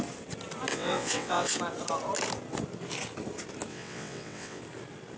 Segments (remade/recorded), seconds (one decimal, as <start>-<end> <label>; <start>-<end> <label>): 0.0-0.7 recorded; 0.7-1.6 remade; 1.6-3.7 recorded; 3.7-4.6 remade; 4.6-5.2 recorded